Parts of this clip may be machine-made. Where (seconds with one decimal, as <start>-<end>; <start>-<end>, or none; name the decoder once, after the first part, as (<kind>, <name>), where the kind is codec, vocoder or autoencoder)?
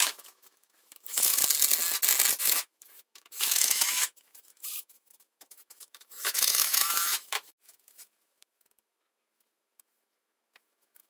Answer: 0.0-1.4 (autoencoder, DAC-VAE); 2.4-11.1